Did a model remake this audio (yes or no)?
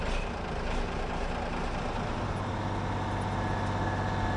no